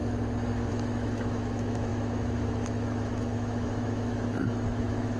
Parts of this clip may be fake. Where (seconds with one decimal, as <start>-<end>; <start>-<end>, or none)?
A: 0.7-5.2